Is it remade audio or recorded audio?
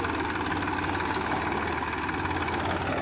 recorded